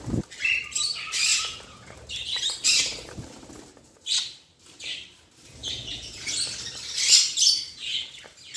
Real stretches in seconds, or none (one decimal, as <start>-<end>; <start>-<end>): 0.0-1.3; 1.9-5.6; 6.3-7.7; 8.2-8.6